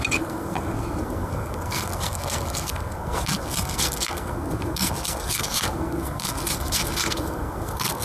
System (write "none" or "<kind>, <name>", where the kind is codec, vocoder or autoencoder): codec, SNAC